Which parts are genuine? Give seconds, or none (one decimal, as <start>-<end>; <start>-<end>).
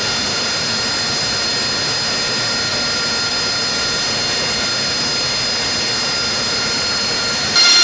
0.0-7.8